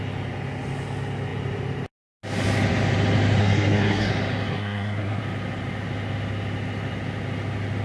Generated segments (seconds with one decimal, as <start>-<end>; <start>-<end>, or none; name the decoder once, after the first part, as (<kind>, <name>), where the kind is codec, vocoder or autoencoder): 3.4-4.1 (codec, SNAC); 4.5-5.2